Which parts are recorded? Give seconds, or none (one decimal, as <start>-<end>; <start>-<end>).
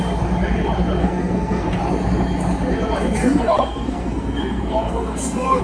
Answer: 0.0-1.0; 1.8-3.2